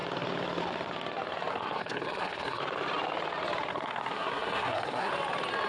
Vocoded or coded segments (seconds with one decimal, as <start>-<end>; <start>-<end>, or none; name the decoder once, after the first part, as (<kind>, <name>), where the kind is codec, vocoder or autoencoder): 1.5-2.6 (codec, SNAC); 3.7-5.1